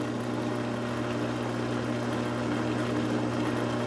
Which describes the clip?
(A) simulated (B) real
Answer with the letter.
B